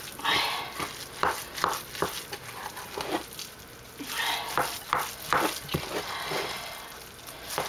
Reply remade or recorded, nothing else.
recorded